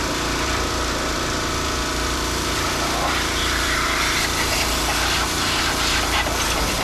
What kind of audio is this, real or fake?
fake